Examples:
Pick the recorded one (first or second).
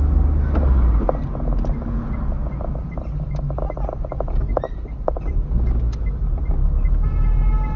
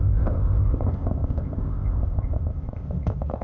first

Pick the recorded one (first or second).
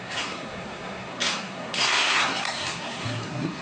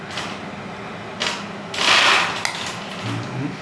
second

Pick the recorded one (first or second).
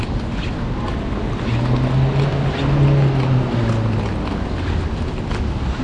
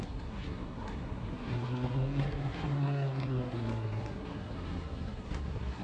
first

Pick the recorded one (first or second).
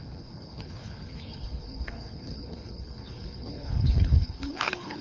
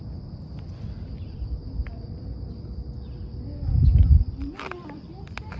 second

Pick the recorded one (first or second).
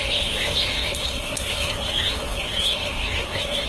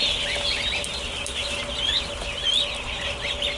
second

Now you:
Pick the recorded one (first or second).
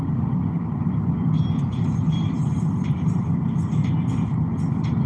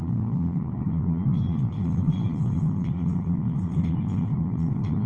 first